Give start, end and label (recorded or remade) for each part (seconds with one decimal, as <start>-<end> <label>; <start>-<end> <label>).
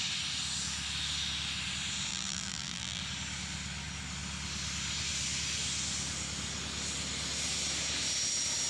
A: 0.0-2.1 recorded; 2.1-3.0 remade; 3.0-8.7 recorded